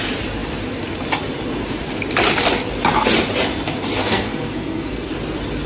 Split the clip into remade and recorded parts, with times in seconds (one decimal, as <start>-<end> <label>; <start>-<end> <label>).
0.0-4.0 recorded; 4.0-5.1 remade; 5.1-5.7 recorded